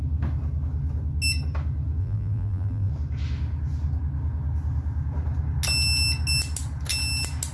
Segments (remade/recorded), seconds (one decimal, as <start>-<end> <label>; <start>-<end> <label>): 0.0-2.0 recorded; 2.0-2.9 remade; 2.9-7.5 recorded